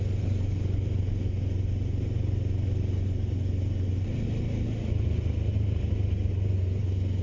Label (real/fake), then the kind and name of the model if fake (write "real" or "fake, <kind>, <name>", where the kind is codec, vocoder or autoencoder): real